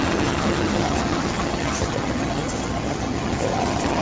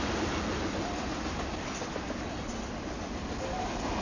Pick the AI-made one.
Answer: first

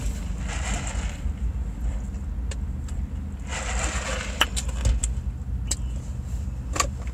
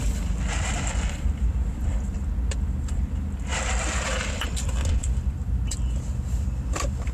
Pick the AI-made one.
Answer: second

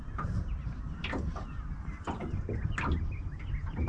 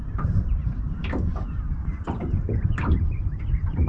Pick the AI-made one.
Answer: second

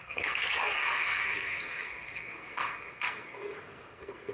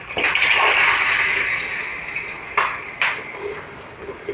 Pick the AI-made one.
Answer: first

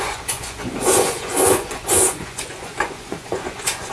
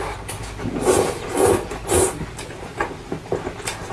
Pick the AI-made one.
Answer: first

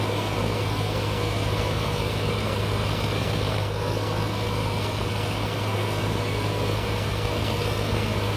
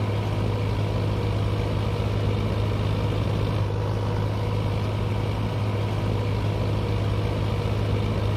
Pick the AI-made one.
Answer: first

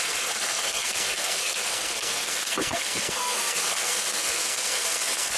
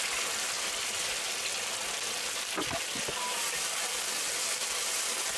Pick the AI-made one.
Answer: first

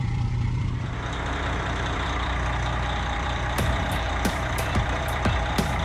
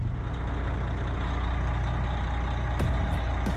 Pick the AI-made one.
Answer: first